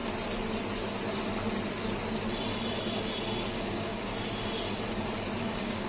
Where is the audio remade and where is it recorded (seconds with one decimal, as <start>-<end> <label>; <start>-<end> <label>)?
0.0-3.5 recorded; 3.5-4.1 remade; 4.1-5.4 recorded; 5.4-5.9 remade